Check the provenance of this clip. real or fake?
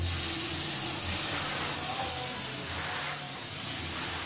real